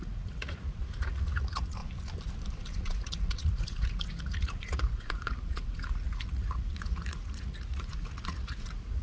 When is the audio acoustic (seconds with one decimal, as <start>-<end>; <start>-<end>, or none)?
1.8-2.6